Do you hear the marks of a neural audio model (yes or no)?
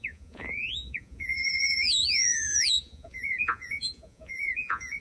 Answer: yes